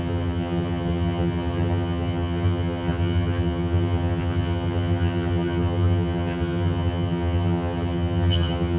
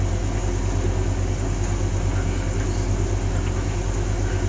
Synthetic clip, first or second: first